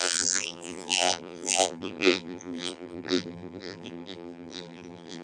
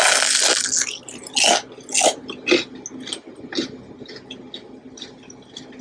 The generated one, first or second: first